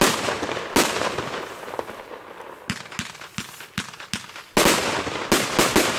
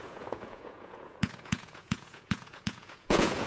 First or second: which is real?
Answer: first